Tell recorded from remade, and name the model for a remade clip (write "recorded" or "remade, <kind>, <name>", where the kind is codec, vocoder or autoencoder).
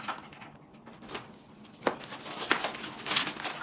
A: recorded